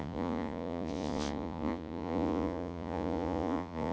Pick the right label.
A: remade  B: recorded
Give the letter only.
A